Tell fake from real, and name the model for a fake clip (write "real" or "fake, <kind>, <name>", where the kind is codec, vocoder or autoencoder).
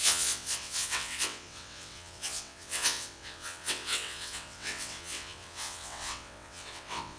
fake, vocoder, WaveNeXt